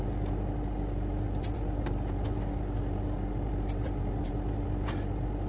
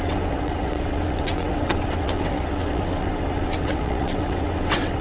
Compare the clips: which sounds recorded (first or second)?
first